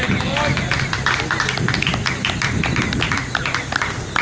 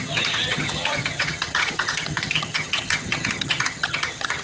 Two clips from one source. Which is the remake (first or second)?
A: second